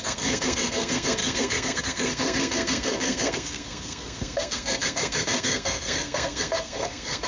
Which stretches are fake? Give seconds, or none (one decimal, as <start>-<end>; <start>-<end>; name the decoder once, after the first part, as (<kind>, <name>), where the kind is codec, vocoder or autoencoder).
0.0-7.3 (codec, SNAC)